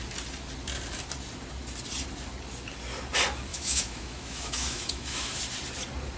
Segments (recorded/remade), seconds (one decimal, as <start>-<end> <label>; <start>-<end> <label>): 0.0-3.5 recorded; 3.5-5.4 remade; 5.4-6.2 recorded